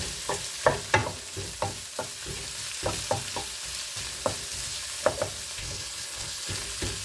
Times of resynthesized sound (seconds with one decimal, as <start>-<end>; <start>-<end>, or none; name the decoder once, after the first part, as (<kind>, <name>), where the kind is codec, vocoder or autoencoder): 5.6-6.6 (codec, HILCodec)